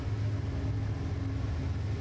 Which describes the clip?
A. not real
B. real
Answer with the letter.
B